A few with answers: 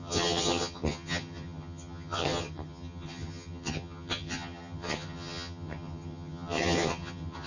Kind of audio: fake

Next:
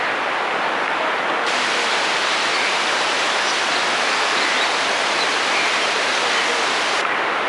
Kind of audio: real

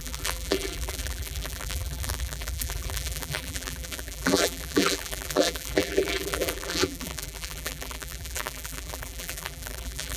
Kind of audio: fake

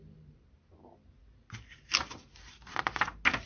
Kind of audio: real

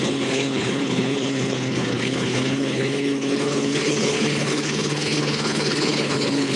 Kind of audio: fake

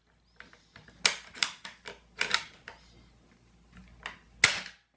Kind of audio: real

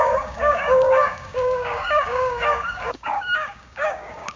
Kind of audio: fake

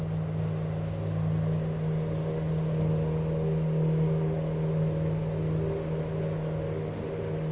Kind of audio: real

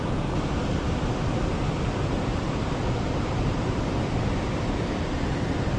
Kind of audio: real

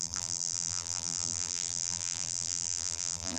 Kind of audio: fake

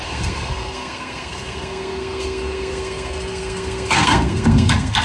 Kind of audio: fake